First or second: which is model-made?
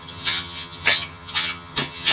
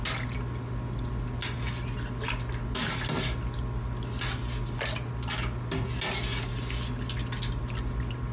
first